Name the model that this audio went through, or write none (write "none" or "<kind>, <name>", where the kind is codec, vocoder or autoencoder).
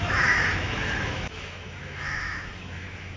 autoencoder, DAC-VAE